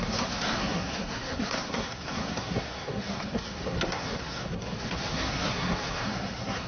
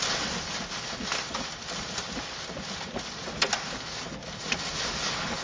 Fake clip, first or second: first